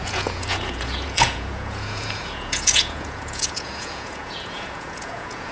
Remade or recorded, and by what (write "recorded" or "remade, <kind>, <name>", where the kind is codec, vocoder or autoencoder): remade, vocoder, Vocos